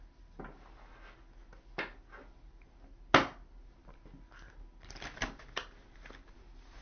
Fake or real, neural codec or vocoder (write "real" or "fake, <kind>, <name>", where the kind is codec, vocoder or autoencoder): real